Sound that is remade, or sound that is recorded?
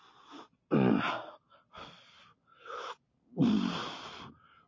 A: recorded